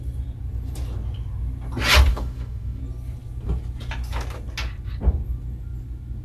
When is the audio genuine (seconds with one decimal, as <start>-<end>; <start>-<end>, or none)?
0.0-2.1; 2.8-6.2